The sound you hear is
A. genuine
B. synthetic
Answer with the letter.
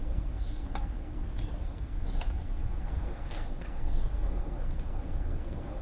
B